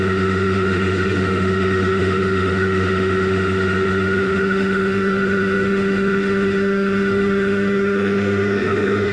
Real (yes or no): no